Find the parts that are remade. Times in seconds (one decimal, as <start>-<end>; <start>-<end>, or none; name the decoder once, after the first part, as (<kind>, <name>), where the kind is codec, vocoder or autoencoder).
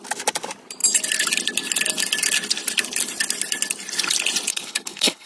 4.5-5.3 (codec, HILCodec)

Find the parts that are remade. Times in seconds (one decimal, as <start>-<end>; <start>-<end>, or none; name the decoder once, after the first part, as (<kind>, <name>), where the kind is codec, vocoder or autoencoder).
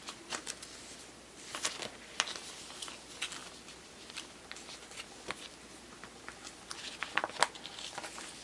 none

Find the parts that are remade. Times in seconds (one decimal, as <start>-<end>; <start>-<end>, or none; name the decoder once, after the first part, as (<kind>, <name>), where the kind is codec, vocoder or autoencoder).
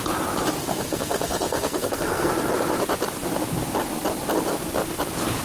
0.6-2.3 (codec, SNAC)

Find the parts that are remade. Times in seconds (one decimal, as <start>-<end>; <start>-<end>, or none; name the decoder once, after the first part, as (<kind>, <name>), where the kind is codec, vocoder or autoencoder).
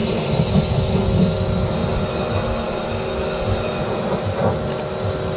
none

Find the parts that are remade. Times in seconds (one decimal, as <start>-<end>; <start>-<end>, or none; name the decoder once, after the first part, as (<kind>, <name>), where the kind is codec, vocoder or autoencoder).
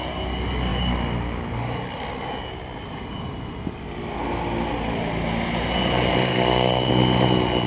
6.3-6.9 (codec, DAC)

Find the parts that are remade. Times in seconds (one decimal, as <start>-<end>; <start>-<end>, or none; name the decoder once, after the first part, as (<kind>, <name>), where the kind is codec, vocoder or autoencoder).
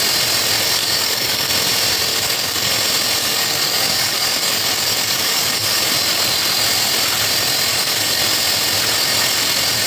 0.8-1.5 (codec, DAC); 2.1-2.7; 3.2-5.8; 7.7-8.2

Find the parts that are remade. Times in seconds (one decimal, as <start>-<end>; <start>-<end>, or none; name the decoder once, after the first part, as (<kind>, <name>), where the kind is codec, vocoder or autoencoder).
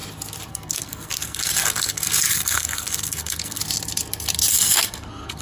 0.5-3.6 (codec, SNAC); 4.5-5.4